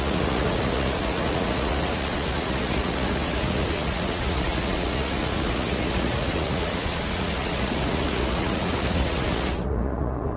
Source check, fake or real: fake